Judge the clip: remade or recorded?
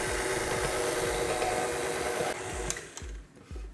recorded